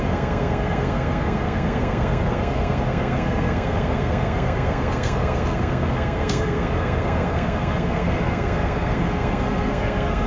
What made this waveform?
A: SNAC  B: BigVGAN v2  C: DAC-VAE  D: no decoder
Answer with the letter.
A